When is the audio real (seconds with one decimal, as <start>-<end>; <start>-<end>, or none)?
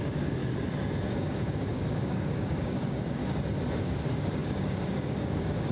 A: 0.4-1.2; 3.2-3.8